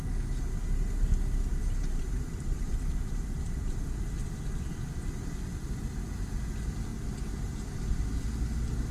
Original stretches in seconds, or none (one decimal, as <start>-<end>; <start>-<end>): 0.0-1.5; 5.0-8.9